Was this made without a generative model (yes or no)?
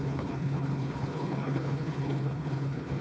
no